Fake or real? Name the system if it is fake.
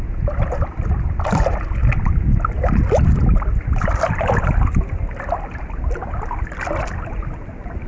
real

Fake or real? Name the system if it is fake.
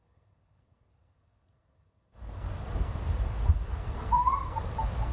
fake, codec, SNAC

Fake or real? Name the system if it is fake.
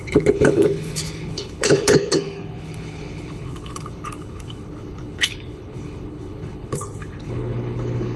fake, codec, HILCodec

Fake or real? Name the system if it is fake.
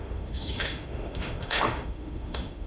fake, autoencoder, DAC-VAE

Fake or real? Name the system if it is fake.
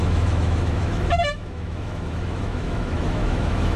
fake, autoencoder, DAC-VAE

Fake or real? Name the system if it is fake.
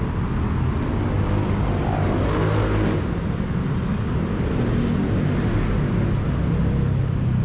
real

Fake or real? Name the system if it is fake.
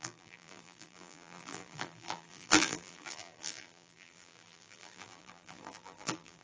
fake, vocoder, BigVGAN v2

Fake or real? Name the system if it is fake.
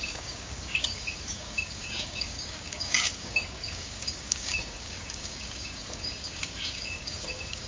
fake, codec, DAC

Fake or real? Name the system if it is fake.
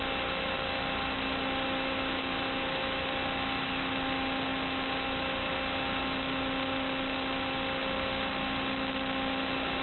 real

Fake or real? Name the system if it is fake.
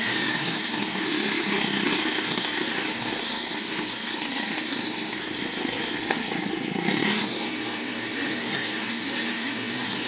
fake, codec, SNAC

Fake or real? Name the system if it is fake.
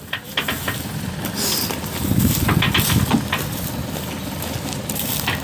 real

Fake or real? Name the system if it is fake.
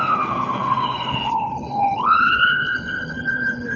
fake, codec, HILCodec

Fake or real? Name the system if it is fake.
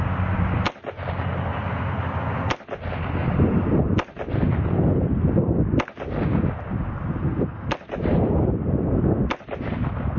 real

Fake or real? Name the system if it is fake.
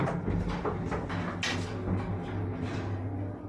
real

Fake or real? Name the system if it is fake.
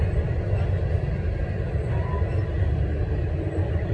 real